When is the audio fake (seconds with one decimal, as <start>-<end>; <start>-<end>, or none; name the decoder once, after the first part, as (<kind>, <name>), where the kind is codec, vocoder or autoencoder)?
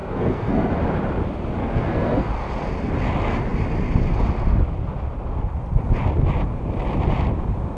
0.0-0.7 (codec, SNAC); 1.6-2.3